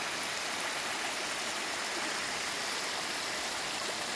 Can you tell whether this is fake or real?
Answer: real